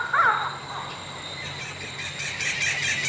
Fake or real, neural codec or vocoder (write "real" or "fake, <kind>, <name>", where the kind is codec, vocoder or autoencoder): real